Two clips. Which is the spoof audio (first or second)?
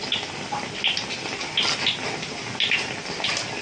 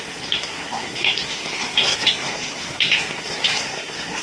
second